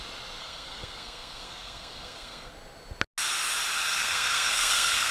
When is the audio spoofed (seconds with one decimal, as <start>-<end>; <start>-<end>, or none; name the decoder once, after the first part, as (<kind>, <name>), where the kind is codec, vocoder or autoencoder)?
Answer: 0.4-2.5 (codec, SNAC); 3.9-5.1